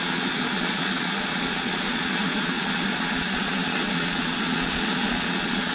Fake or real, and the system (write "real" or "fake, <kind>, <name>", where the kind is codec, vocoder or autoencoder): fake, vocoder, Vocos